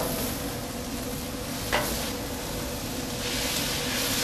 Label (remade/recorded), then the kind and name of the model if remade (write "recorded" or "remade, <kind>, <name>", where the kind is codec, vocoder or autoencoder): recorded